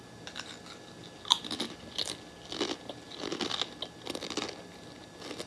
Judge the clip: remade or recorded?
recorded